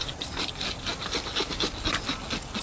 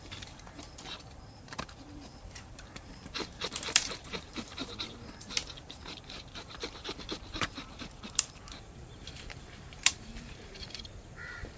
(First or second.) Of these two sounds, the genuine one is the first